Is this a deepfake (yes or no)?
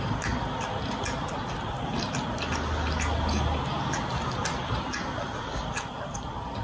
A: no